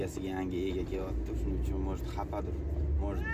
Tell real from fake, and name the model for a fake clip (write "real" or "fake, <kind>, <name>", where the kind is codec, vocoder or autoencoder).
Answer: real